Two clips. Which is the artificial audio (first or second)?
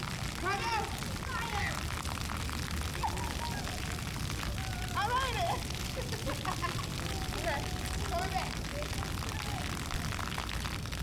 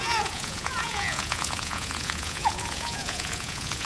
second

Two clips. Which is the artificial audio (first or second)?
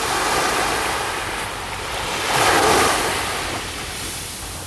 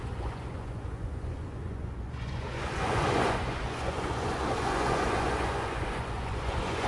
second